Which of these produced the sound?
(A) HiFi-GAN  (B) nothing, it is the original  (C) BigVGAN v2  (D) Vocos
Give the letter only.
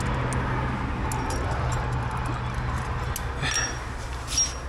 B